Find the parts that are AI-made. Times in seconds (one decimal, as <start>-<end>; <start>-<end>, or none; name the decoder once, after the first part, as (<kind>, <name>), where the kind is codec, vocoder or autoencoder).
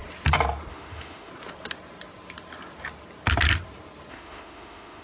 0.7-1.3 (autoencoder, DAC-VAE); 4.1-5.0